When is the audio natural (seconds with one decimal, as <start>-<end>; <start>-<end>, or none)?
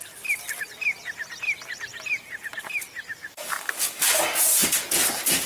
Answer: 0.0-3.2; 4.0-5.5